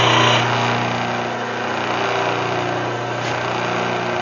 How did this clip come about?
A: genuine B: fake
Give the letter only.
A